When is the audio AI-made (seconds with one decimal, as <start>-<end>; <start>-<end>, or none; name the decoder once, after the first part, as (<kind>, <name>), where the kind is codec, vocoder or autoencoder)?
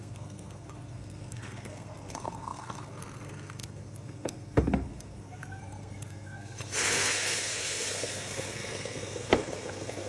0.0-10.1 (codec, SNAC)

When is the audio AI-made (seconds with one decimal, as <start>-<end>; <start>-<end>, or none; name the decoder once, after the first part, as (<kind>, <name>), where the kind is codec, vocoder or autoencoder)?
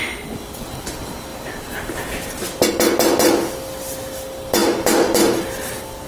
none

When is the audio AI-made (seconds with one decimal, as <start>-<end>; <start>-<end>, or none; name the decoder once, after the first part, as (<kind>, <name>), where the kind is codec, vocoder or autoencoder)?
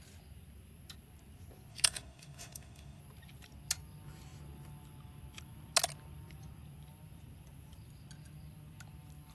1.7-3.0 (autoencoder, DAC-VAE)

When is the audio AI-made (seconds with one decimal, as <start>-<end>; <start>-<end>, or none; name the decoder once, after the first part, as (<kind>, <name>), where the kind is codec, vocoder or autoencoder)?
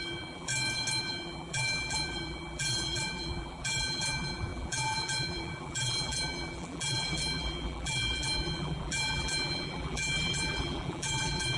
0.0-0.5 (vocoder, BigVGAN v2); 1.0-11.6